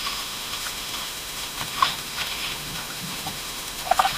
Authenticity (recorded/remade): remade